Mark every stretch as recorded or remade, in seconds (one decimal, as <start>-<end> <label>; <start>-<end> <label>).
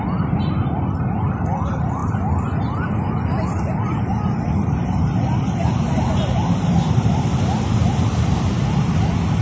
0.0-9.4 recorded